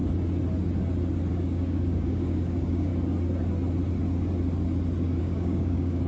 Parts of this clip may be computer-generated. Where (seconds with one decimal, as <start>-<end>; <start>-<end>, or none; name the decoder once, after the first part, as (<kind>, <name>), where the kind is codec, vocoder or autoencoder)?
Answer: 1.3-2.9 (codec, DAC); 5.2-6.1